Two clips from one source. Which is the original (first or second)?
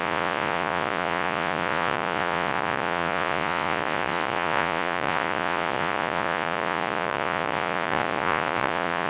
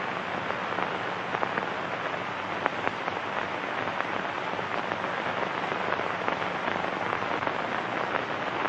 second